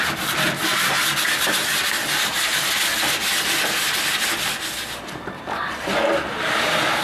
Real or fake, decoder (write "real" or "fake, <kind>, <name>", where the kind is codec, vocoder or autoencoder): real